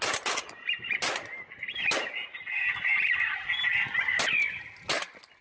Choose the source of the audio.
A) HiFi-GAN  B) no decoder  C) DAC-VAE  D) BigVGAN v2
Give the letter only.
B